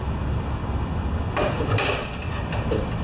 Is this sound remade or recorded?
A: remade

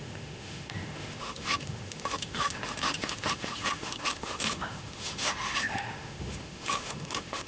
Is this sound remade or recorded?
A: remade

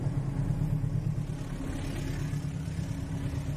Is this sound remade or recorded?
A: recorded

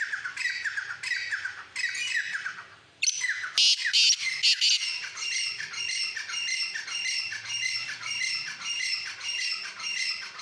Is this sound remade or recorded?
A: recorded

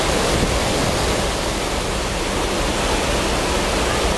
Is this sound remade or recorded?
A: recorded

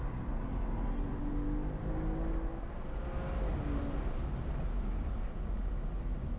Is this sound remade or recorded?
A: recorded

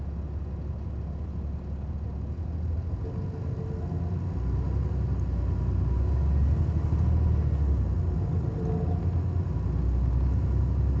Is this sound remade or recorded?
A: recorded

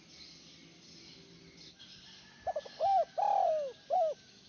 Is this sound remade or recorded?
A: recorded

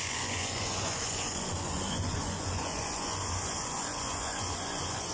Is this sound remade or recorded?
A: remade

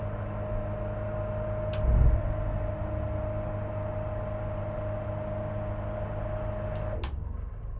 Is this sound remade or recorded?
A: recorded